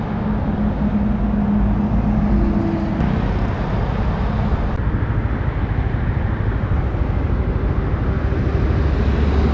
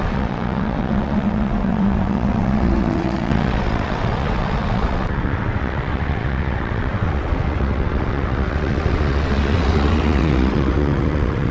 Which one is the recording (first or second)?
first